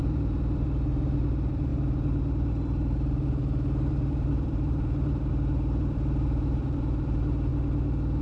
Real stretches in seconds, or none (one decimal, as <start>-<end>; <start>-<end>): 7.5-8.2